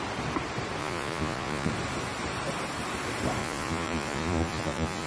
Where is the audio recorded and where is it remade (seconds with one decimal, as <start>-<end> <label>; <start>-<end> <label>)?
0.0-0.8 recorded; 0.8-1.7 remade; 1.7-3.4 recorded; 3.4-5.1 remade